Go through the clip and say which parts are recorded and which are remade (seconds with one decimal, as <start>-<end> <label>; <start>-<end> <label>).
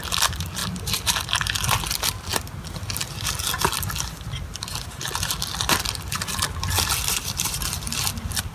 0.0-0.6 remade; 0.6-1.8 recorded; 1.8-2.3 remade; 2.3-7.1 recorded; 7.1-8.5 remade